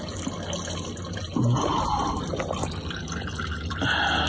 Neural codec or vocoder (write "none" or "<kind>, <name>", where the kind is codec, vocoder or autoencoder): none